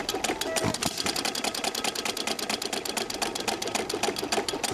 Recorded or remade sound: recorded